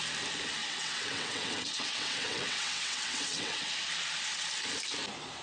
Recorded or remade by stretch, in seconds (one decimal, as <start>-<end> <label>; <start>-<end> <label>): 0.0-0.6 recorded; 0.6-3.7 remade; 3.7-5.4 recorded